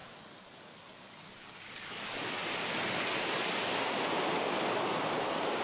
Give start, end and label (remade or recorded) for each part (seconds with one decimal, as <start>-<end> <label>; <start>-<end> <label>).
0.0-2.0 remade; 2.0-5.6 recorded

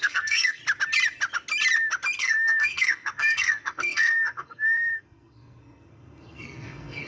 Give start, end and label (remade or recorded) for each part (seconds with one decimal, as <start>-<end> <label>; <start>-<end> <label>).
0.0-0.6 remade; 0.6-2.2 recorded; 2.2-7.1 remade

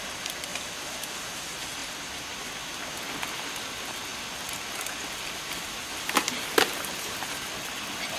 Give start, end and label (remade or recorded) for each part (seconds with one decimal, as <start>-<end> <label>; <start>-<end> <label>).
0.0-8.2 recorded

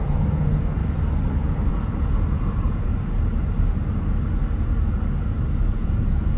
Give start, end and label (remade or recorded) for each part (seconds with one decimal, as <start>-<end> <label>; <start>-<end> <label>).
0.0-0.8 remade; 0.8-1.7 recorded; 1.7-2.9 remade; 2.9-5.6 recorded; 5.6-6.4 remade

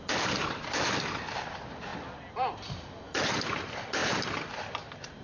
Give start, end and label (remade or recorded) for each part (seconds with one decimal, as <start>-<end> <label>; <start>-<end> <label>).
0.0-5.2 recorded

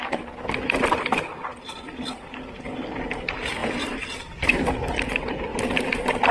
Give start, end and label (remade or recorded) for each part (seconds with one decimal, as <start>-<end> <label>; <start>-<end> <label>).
0.0-5.5 recorded; 5.5-6.3 remade

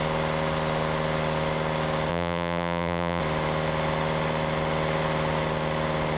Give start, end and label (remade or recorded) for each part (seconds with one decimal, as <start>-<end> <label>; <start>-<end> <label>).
0.0-2.1 recorded; 2.1-3.2 remade; 3.2-6.2 recorded

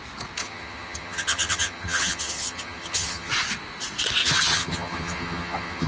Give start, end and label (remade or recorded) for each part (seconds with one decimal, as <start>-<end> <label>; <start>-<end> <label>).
0.0-0.4 recorded; 0.4-3.3 remade; 3.3-4.2 recorded; 4.2-5.9 remade